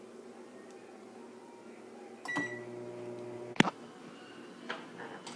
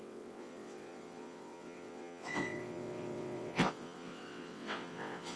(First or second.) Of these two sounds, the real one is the first